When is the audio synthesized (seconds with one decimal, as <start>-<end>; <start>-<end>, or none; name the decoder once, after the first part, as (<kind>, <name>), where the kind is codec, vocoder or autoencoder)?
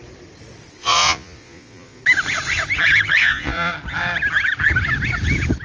0.8-2.0 (vocoder, Vocos); 3.2-3.7